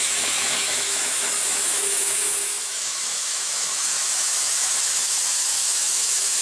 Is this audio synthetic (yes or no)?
yes